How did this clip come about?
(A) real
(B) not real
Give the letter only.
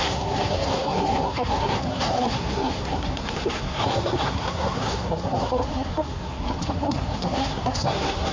B